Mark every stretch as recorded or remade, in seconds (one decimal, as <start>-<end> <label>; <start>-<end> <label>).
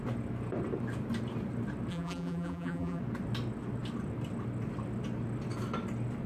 0.0-1.9 recorded; 1.9-3.0 remade; 3.0-6.3 recorded